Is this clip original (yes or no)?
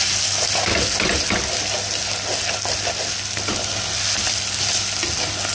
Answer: yes